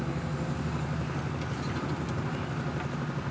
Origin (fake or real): real